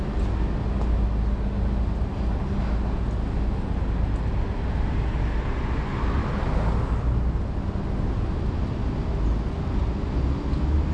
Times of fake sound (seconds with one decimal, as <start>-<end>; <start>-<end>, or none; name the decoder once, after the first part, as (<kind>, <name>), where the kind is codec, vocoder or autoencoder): none